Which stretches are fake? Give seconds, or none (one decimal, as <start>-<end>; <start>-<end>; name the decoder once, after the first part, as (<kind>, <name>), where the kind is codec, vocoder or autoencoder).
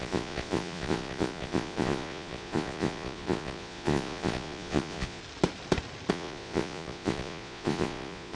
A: 0.0-5.2 (vocoder, Vocos); 6.1-8.4